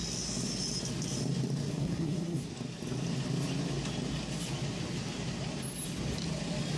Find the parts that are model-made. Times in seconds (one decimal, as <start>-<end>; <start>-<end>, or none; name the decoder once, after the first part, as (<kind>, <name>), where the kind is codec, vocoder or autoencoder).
1.7-2.5 (codec, SNAC)